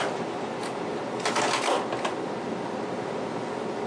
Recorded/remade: recorded